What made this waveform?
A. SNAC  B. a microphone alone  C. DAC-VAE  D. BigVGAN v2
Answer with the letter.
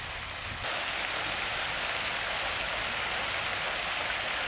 B